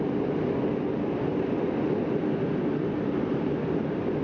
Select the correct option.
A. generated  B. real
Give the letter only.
B